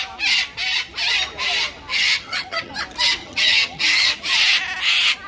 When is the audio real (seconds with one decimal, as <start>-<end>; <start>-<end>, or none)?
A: 0.0-1.9; 2.7-3.2; 4.1-5.3